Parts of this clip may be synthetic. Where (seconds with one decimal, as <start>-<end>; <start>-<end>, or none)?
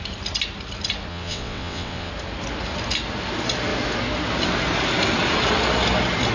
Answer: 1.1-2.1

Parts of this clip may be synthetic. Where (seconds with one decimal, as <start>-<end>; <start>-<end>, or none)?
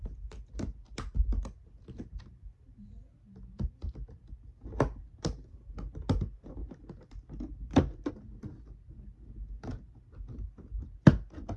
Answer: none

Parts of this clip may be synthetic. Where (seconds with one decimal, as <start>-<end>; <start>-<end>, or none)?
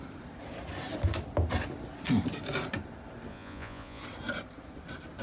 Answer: 3.3-4.0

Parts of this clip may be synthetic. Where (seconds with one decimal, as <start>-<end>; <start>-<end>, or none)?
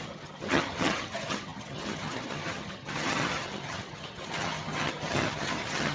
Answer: 0.0-5.9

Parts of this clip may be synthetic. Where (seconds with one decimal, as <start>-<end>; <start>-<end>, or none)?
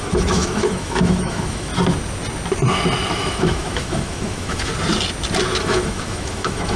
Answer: 0.0-1.7; 3.1-4.7; 5.6-6.8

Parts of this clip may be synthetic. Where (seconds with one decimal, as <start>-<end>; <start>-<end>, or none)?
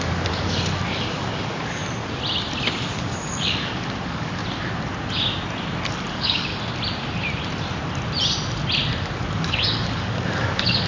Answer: 0.0-1.8; 2.8-4.4; 6.1-6.5; 9.2-10.9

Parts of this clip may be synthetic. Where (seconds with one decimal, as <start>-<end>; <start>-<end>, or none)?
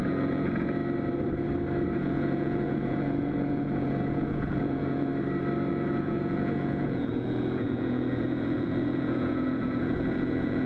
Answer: 0.0-0.8; 2.0-5.1; 5.7-10.7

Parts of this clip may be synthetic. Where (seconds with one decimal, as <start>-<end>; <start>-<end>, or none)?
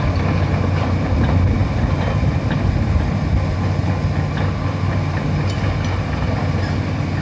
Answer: none